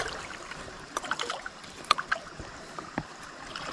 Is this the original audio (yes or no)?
no